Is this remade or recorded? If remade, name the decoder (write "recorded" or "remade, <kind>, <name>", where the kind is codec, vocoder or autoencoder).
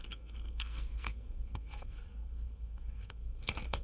remade, codec, SNAC